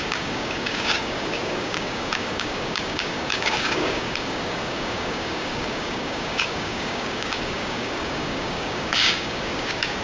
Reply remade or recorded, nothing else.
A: remade